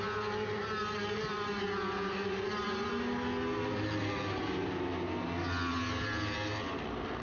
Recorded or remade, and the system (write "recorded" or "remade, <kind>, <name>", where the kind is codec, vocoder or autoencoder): recorded